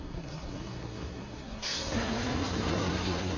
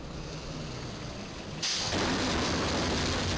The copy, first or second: first